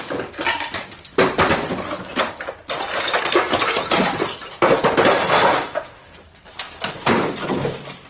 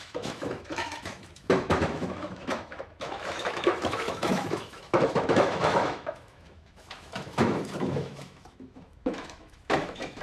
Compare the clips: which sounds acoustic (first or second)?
first